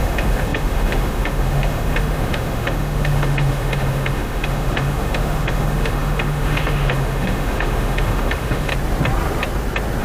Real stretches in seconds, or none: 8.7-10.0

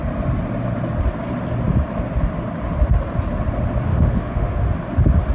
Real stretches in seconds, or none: 0.0-3.9; 4.7-5.3

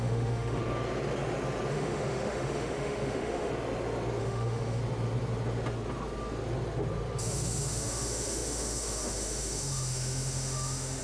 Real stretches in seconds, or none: 0.6-1.7; 3.5-4.2; 4.8-7.2

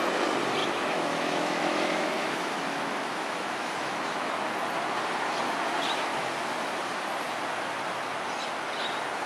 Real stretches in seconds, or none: 0.0-0.6; 4.4-9.3

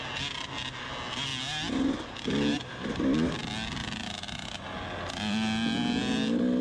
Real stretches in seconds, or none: 0.0-6.6

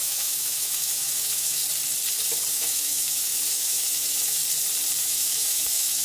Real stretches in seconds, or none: 1.6-2.5; 4.4-5.0

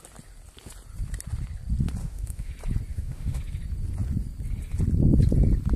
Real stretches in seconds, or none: 0.0-2.0; 2.5-2.9; 3.4-5.8

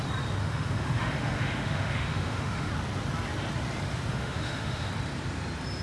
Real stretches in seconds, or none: 0.0-0.4; 2.7-4.1; 4.9-5.8